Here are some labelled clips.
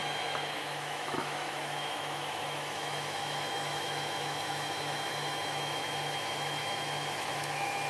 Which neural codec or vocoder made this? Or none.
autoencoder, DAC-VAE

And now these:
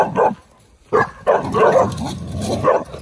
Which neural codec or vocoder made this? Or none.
none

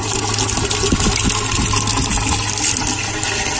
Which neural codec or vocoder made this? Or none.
none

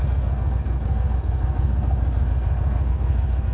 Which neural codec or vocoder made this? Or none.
codec, SNAC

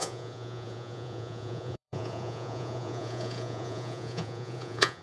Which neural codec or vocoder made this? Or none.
vocoder, Vocos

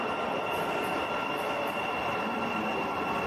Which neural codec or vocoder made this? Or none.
none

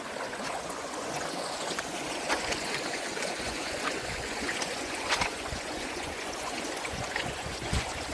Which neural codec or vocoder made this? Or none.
vocoder, Vocos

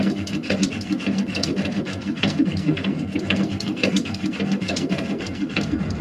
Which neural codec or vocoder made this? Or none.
codec, SNAC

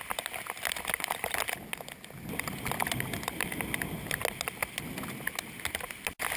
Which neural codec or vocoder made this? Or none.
none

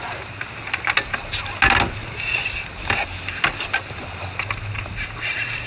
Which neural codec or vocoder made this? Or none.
none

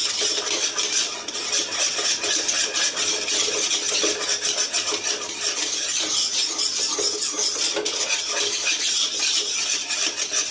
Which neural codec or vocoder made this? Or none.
none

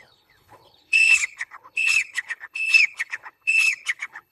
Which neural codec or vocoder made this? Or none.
codec, HILCodec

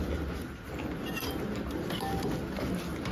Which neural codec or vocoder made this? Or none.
none